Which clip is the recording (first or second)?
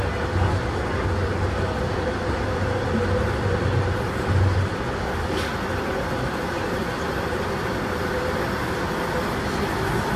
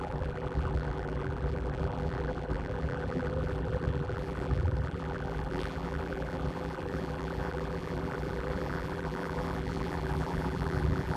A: first